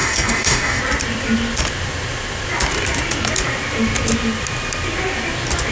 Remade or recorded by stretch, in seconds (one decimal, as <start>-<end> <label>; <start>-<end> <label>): 0.0-0.8 remade; 0.8-5.7 recorded